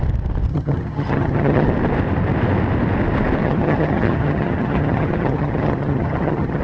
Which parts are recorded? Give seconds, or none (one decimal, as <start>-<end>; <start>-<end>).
0.0-0.5; 1.7-3.4